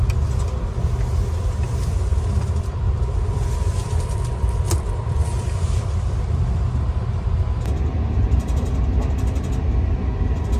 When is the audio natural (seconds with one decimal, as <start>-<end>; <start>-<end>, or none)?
0.0-2.1; 6.4-10.6